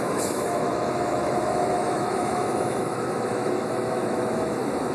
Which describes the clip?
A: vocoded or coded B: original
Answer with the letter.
A